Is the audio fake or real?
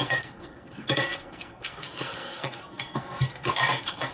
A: fake